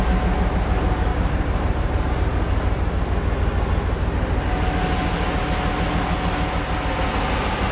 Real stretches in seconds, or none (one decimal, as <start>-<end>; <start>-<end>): 0.0-1.1; 2.1-7.7